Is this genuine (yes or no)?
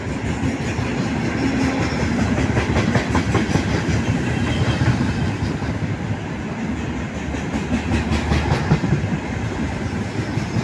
yes